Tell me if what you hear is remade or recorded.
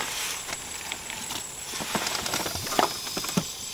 recorded